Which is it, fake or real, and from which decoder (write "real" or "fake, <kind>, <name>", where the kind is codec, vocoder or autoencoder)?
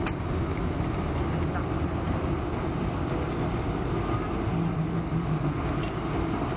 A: real